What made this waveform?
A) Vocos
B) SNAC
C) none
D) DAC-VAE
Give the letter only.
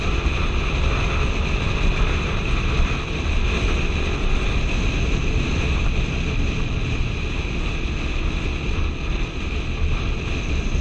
C